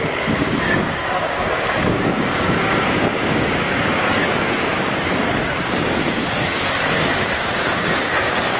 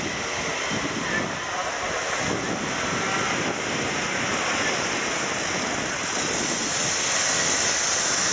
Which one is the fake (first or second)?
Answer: first